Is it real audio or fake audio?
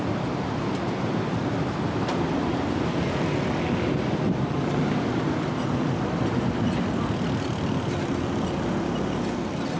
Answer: real